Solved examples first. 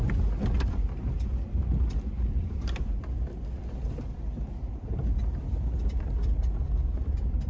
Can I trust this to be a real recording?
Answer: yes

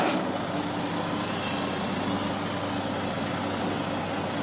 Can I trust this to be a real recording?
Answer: yes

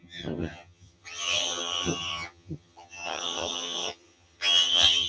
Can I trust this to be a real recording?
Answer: no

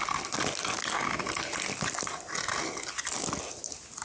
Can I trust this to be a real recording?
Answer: yes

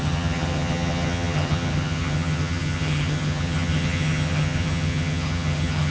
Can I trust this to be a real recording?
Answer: no